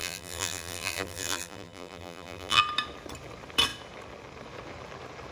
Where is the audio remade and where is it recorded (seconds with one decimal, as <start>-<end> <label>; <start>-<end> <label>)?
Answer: 0.0-2.6 remade; 2.6-5.3 recorded